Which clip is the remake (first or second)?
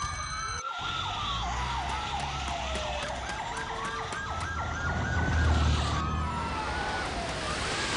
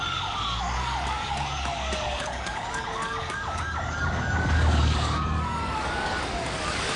second